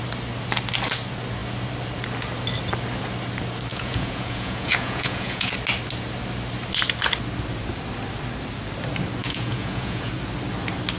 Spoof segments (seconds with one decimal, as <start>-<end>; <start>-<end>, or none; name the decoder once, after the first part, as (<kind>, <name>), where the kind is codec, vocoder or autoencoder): 3.7-5.5 (vocoder, Vocos); 9.2-10.1